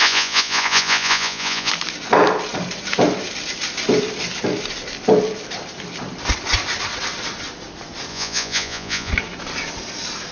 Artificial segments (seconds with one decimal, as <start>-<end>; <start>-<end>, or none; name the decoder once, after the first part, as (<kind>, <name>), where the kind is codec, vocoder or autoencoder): 0.0-1.7 (vocoder, Vocos); 8.1-9.1